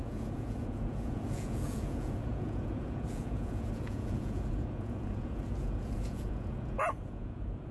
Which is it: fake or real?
fake